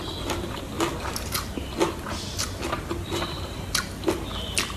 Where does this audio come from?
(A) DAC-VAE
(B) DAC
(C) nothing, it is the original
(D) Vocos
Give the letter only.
C